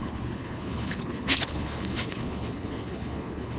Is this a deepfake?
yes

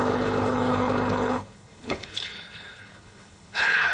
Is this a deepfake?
yes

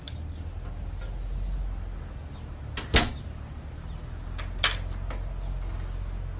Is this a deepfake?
no